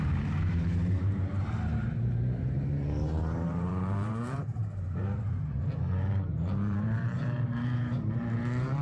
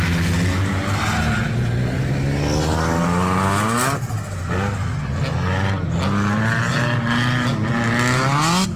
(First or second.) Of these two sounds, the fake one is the first